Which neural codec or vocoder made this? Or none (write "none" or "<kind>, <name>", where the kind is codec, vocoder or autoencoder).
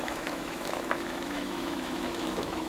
autoencoder, DAC-VAE